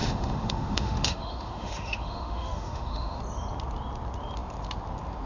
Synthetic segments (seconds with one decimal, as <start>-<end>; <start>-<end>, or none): 0.0-3.2